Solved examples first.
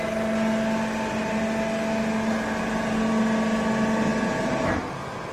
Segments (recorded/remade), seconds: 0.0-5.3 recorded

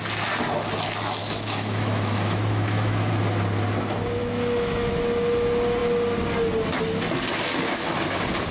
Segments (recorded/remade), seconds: 0.0-1.2 recorded; 1.2-3.1 remade; 3.1-4.2 recorded; 4.2-4.9 remade; 4.9-8.5 recorded